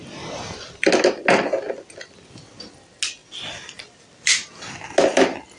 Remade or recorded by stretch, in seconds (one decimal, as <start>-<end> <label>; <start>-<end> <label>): 0.0-3.2 recorded; 3.2-4.7 remade; 4.7-5.6 recorded